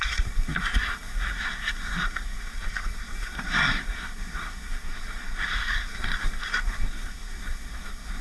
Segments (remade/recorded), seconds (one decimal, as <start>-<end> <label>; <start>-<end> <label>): 0.0-8.2 remade